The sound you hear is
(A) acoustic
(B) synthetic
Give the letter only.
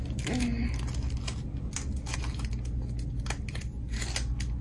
A